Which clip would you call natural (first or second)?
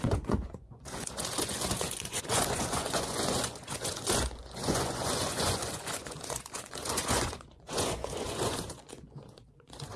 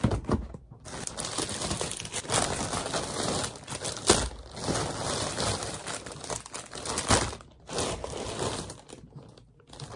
second